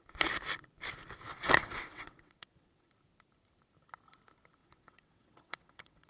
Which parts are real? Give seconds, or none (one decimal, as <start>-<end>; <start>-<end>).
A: 0.0-1.3; 2.9-4.6